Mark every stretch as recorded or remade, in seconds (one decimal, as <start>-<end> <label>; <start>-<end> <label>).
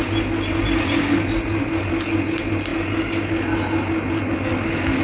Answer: 0.0-5.0 recorded